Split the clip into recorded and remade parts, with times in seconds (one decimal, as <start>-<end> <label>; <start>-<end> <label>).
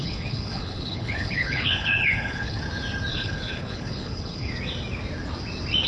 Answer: 0.0-2.6 remade; 2.6-3.1 recorded; 3.1-4.5 remade; 4.5-5.9 recorded